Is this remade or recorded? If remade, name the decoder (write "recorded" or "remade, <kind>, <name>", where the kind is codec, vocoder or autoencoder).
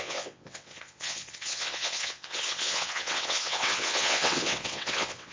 remade, vocoder, WaveNeXt